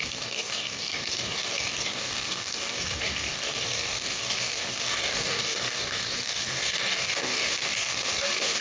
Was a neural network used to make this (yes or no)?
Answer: yes